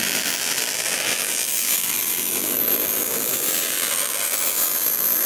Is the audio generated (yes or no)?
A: yes